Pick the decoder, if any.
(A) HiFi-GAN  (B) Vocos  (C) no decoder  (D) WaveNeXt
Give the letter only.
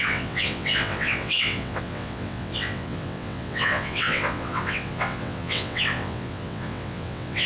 D